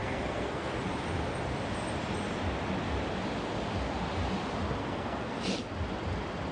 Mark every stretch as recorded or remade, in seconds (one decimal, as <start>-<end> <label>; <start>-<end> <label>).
0.0-0.7 remade; 0.7-4.8 recorded; 4.8-5.4 remade; 5.4-6.5 recorded